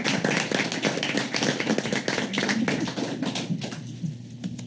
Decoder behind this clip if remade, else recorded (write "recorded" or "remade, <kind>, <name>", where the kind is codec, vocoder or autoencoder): recorded